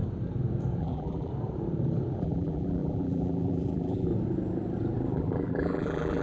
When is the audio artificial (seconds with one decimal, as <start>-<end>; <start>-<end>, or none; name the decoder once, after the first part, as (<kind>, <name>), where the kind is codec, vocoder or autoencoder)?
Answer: 0.8-1.3 (vocoder, BigVGAN v2); 2.2-4.1; 5.1-6.2